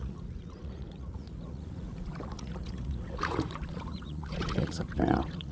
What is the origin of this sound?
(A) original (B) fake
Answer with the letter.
B